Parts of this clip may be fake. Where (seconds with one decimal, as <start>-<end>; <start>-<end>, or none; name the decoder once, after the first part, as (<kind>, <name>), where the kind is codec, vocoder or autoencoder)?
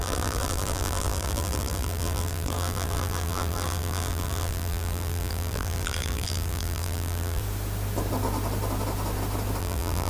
0.0-7.4 (vocoder, BigVGAN v2); 9.6-10.1